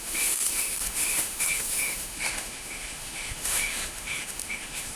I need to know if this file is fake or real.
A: fake